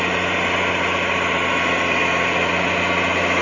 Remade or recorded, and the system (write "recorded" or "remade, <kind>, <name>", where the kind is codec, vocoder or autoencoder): recorded